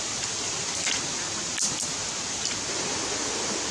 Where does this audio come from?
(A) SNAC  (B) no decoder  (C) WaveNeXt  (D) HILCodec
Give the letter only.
B